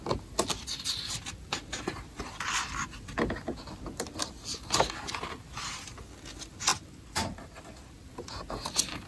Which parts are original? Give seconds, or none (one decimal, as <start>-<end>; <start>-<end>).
0.0-9.1